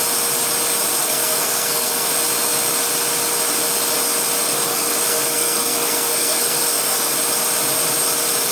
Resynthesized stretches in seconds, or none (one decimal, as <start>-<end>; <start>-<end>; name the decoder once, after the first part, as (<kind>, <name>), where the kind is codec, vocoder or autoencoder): 1.0-2.1 (codec, SNAC); 4.4-7.1